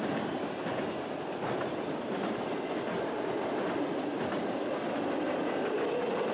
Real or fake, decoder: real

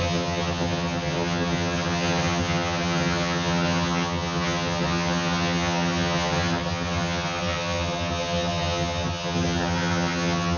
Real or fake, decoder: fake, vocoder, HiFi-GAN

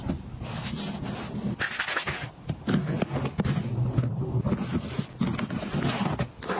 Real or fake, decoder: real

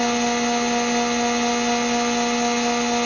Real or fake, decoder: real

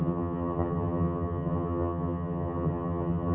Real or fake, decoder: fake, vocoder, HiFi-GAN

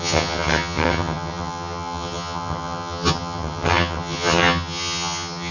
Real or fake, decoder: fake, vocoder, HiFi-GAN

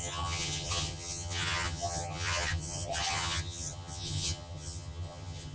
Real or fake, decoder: fake, vocoder, HiFi-GAN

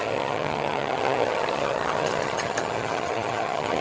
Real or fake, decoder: fake, vocoder, HiFi-GAN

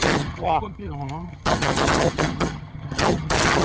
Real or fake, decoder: fake, vocoder, HiFi-GAN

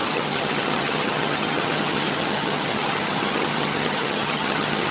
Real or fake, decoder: fake, vocoder, HiFi-GAN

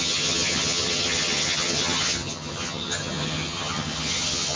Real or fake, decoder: fake, vocoder, HiFi-GAN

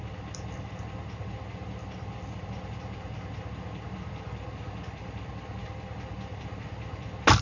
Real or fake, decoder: real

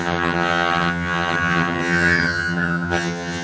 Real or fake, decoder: fake, vocoder, HiFi-GAN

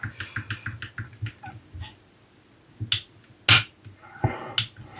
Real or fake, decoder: real